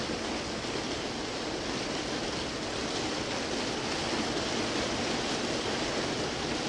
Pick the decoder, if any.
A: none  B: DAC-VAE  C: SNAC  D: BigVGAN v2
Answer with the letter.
D